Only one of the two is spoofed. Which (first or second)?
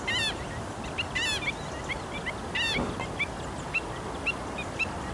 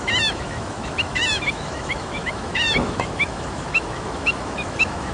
second